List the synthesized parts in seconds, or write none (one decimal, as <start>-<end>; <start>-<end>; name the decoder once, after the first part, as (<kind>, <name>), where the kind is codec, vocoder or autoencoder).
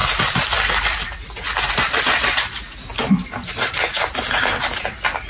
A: 0.0-1.7 (vocoder, BigVGAN v2); 2.9-3.8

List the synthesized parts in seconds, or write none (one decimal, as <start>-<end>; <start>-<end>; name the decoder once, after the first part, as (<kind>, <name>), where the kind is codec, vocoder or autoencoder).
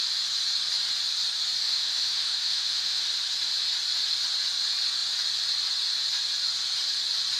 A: 1.6-3.0 (autoencoder, DAC-VAE)